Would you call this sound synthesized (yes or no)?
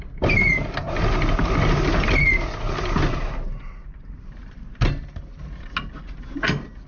no